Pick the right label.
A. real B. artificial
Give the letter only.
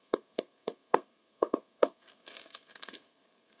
B